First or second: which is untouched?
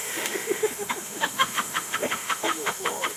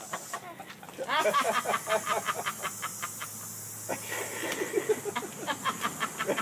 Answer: second